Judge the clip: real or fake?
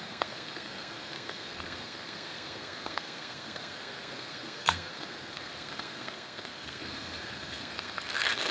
fake